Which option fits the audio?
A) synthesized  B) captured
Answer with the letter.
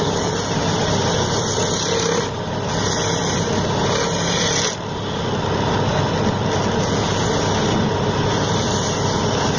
B